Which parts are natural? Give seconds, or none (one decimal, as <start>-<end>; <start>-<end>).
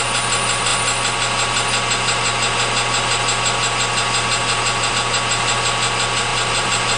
0.0-6.3